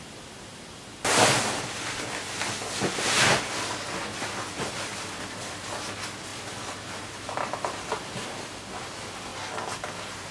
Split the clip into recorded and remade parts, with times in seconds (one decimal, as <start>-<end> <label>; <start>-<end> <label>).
0.0-10.3 recorded

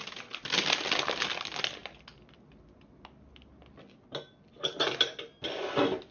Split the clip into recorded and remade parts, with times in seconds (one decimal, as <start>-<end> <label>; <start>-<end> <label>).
0.0-6.1 recorded

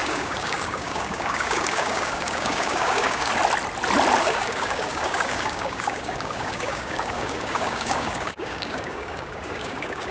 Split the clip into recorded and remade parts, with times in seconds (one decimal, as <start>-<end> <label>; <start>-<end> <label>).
0.0-3.3 remade; 3.3-4.2 recorded; 4.2-10.1 remade

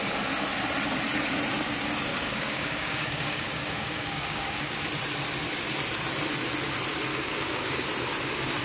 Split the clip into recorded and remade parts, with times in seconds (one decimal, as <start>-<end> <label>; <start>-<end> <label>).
0.0-2.1 recorded; 2.1-4.9 remade; 4.9-7.1 recorded; 7.1-7.9 remade; 7.9-8.6 recorded

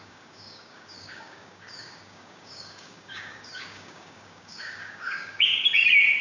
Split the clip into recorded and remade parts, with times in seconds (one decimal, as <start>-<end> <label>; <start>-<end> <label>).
0.0-5.5 remade; 5.5-6.2 recorded

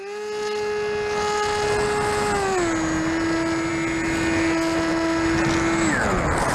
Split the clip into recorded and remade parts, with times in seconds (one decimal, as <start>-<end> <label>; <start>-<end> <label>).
0.0-6.5 recorded